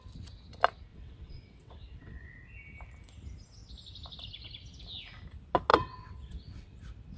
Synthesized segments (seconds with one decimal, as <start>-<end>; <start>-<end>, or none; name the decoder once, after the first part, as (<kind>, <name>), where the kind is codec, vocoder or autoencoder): 0.9-2.3 (vocoder, WaveNeXt); 5.7-6.8